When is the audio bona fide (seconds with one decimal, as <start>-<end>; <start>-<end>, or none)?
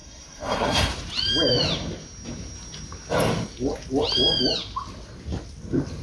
0.9-6.0